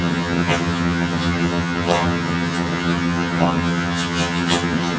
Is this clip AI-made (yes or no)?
yes